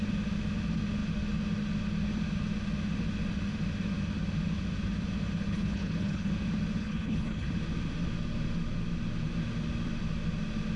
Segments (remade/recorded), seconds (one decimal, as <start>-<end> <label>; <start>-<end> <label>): 0.0-5.5 recorded; 5.5-6.3 remade; 6.3-6.8 recorded; 6.8-7.5 remade; 7.5-10.8 recorded